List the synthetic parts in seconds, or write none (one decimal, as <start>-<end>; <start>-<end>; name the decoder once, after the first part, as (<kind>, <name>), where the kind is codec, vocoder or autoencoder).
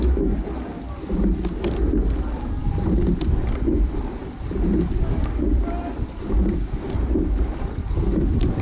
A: none